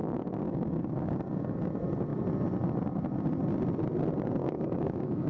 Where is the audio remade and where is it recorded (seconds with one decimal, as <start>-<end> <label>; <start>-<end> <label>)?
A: 0.0-1.6 remade; 1.6-4.4 recorded; 4.4-5.3 remade